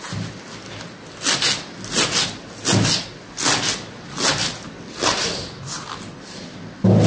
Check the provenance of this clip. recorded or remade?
recorded